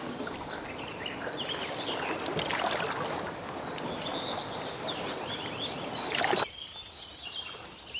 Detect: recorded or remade recorded